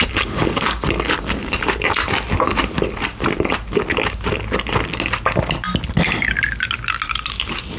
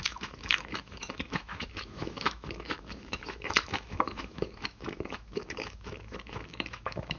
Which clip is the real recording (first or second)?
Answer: first